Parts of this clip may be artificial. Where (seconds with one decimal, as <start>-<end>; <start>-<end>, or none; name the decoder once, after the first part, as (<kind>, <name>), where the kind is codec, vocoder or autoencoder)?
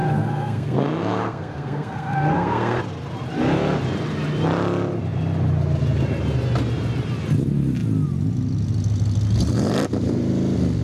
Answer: 0.0-2.8 (codec, SNAC)